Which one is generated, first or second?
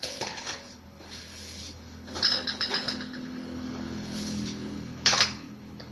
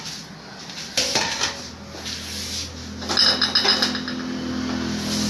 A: first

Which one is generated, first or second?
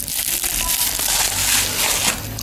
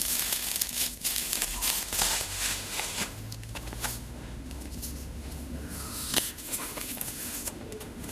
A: second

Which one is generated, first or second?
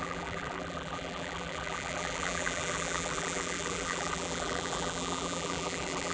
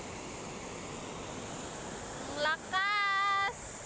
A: first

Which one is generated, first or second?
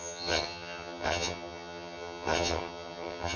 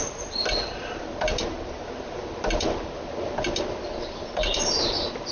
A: first